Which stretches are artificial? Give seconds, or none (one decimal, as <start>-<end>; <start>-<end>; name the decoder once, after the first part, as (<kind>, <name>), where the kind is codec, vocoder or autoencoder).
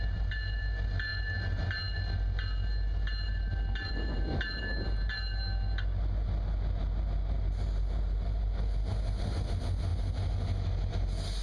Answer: none